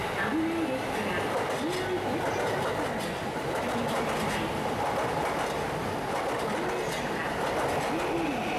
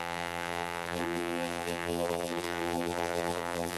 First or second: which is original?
first